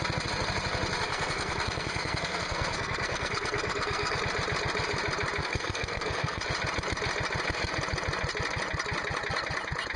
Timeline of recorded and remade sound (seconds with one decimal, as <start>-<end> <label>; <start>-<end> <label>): 0.0-1.1 recorded; 1.1-4.2 remade; 4.2-5.4 recorded; 5.4-6.4 remade; 6.4-10.0 recorded

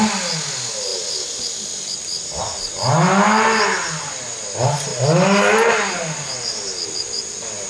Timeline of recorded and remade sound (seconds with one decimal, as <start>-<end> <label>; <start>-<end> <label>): 0.0-7.7 recorded

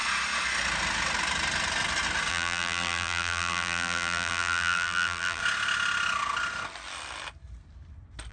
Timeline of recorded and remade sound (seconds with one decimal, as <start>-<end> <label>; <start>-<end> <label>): 0.0-2.3 recorded; 2.3-5.4 remade; 5.4-8.3 recorded

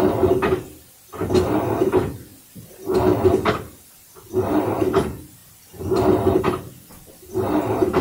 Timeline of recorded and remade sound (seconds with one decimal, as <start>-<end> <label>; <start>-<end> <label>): 0.0-8.0 recorded

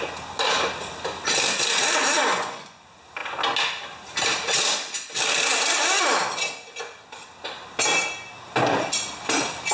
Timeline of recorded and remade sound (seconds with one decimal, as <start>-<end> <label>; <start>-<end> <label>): 0.0-2.2 recorded; 2.2-2.8 remade; 2.8-9.7 recorded

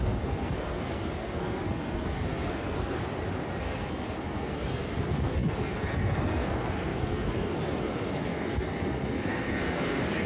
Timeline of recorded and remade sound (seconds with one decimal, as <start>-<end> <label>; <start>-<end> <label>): 0.0-3.0 remade; 3.0-3.6 recorded; 3.6-10.3 remade